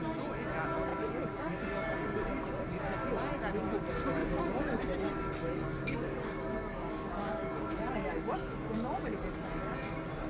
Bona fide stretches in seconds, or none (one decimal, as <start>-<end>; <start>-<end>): 0.0-0.9; 2.5-4.2; 4.8-5.5; 9.2-10.3